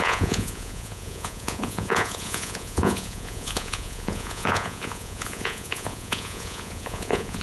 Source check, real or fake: fake